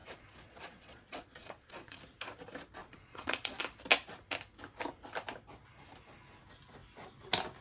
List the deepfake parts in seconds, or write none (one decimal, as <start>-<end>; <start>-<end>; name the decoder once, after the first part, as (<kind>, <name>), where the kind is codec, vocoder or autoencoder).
0.0-2.0 (vocoder, Vocos); 2.8-3.6